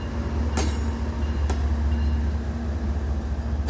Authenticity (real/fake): real